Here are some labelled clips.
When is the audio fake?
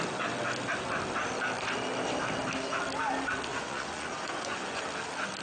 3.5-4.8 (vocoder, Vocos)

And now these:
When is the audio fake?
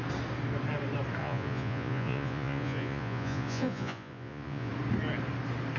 1.2-4.7 (vocoder, Vocos)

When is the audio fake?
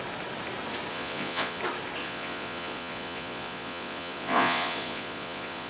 0.9-1.6 (vocoder, Vocos); 2.0-5.7